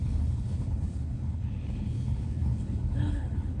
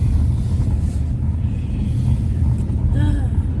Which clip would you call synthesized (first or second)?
first